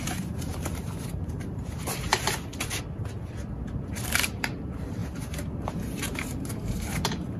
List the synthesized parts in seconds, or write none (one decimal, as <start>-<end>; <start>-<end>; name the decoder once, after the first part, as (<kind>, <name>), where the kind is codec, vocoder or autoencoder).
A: 0.0-2.1 (vocoder, BigVGAN v2); 3.9-7.4